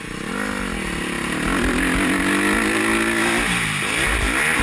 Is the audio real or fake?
real